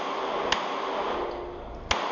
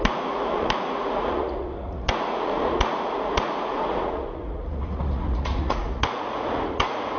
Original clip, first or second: first